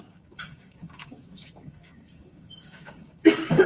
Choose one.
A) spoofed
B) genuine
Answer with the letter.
A